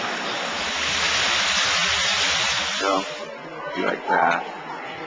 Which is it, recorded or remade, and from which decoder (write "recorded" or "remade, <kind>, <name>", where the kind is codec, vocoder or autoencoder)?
recorded